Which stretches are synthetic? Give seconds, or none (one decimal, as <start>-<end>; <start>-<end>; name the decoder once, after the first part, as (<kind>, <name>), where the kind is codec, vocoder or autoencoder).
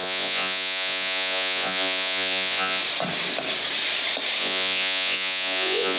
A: 0.0-2.8 (vocoder, Vocos); 4.4-6.0